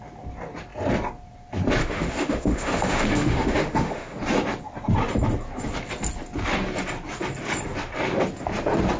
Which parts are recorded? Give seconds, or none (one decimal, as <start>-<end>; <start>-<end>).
0.0-1.8; 4.2-9.0